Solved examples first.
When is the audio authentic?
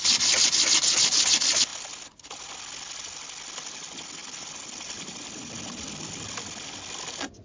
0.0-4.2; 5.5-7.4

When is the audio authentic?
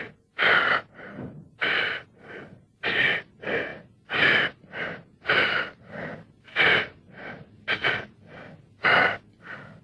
0.0-9.8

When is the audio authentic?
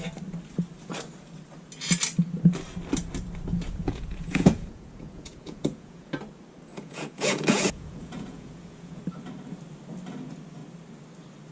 0.0-3.5; 6.1-6.7; 9.0-11.5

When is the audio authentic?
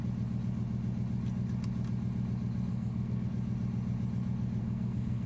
0.0-2.7; 3.3-4.6